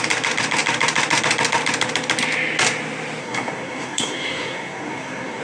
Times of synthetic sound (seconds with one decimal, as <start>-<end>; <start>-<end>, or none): 3.2-5.4